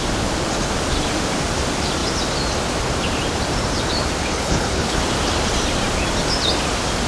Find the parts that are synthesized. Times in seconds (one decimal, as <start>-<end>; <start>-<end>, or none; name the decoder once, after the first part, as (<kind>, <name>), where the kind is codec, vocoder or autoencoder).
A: 4.2-5.0 (codec, HILCodec)